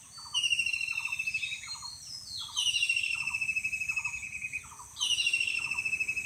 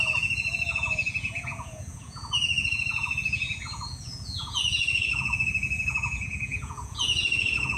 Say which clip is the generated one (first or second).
second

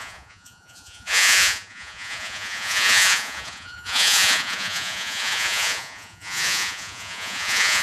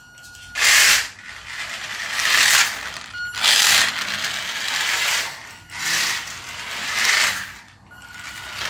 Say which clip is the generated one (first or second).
first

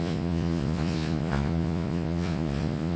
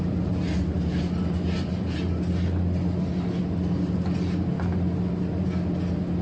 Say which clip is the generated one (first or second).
first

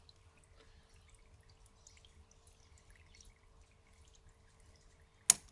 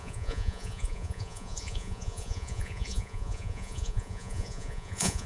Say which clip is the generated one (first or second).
second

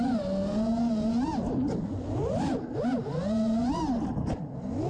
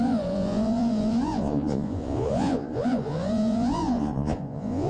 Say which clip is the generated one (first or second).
second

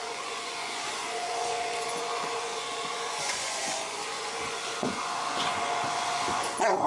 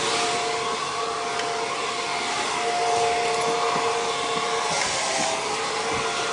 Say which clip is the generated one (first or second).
first